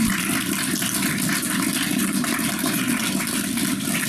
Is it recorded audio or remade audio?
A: recorded